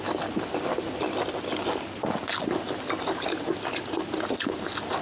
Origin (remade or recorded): recorded